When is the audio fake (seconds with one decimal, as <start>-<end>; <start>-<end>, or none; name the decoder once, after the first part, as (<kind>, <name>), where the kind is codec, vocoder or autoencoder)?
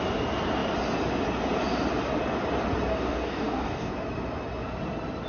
2.9-3.9 (codec, DAC)